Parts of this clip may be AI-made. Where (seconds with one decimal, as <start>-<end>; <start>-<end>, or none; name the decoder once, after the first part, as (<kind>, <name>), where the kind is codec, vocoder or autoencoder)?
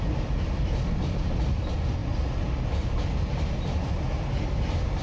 none